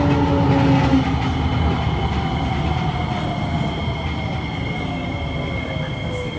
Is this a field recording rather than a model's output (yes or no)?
yes